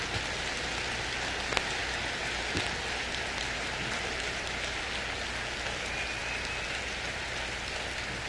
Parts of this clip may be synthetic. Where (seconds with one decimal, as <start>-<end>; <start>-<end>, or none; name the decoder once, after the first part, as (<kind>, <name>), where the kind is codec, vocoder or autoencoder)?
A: none